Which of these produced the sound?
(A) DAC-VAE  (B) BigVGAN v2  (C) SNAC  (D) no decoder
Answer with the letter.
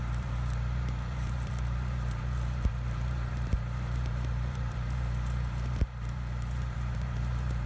B